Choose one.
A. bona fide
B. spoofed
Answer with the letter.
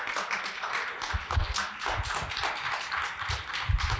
A